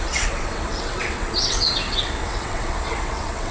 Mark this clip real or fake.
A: fake